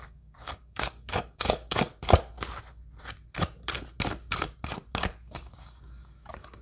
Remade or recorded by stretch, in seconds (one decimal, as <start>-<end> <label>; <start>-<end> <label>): 0.0-1.9 remade; 1.9-5.0 recorded; 5.0-6.6 remade